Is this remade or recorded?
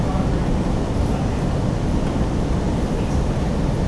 recorded